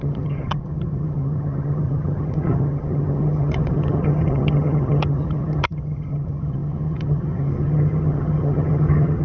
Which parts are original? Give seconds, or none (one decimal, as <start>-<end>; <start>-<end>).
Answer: none